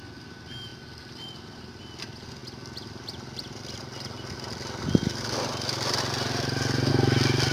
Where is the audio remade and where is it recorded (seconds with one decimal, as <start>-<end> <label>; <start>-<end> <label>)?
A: 0.0-7.5 recorded